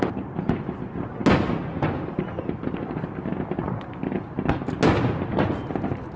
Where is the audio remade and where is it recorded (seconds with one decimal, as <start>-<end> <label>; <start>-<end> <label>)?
0.0-6.2 recorded

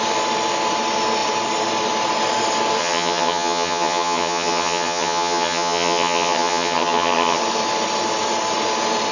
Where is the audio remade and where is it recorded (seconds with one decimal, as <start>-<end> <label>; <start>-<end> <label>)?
0.0-2.8 recorded; 2.8-7.4 remade; 7.4-9.1 recorded

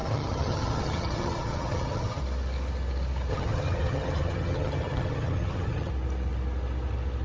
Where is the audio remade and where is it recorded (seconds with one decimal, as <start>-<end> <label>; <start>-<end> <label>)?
0.0-2.2 remade; 2.2-3.3 recorded; 3.3-5.9 remade; 5.9-7.2 recorded

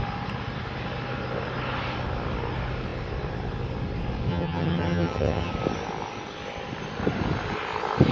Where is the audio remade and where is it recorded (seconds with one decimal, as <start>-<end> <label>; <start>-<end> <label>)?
0.0-4.3 recorded; 4.3-5.5 remade; 5.5-8.1 recorded

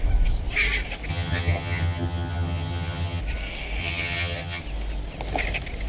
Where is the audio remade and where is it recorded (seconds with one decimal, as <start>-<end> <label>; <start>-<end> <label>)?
0.0-1.1 recorded; 1.1-3.2 remade; 3.2-3.8 recorded; 3.8-4.6 remade; 4.6-5.9 recorded